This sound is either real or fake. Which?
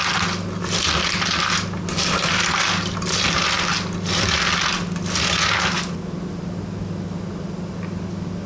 real